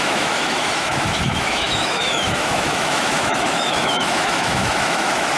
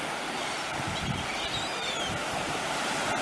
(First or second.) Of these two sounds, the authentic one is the second